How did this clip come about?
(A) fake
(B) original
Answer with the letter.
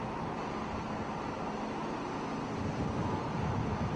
A